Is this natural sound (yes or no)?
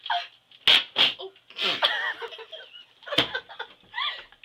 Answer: yes